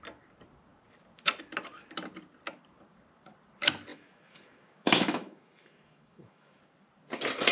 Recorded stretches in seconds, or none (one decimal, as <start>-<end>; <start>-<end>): 0.0-3.9; 6.6-7.5